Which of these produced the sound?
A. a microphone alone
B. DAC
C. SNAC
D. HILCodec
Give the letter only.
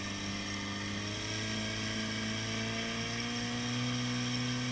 A